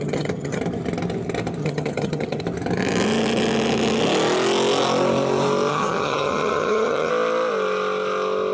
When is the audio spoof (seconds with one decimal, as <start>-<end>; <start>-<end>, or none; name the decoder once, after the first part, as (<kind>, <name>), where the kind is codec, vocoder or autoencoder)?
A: 0.0-0.6 (vocoder, HiFi-GAN); 1.6-2.4; 5.7-7.1